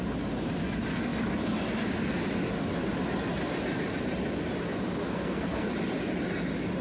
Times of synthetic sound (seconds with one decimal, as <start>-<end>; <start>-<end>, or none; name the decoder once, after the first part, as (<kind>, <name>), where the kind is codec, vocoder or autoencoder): 5.0-5.7 (codec, SNAC)